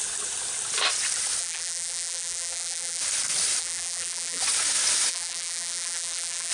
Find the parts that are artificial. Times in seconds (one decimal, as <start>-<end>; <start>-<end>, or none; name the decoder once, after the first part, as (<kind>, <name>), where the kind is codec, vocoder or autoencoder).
1.4-3.0 (vocoder, BigVGAN v2); 3.6-4.4; 5.1-6.5